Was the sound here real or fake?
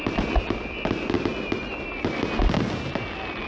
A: real